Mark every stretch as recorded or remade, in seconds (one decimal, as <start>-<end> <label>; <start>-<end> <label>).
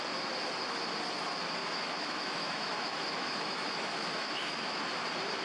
0.0-1.6 recorded; 1.6-4.8 remade; 4.8-5.4 recorded